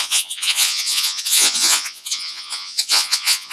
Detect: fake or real fake